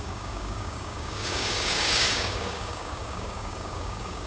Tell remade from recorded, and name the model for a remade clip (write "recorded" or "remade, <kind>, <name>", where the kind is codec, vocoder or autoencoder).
remade, codec, DAC